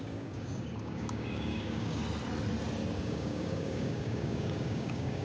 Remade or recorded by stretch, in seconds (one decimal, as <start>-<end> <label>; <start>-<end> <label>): 0.0-2.0 remade; 2.0-3.0 recorded; 3.0-5.2 remade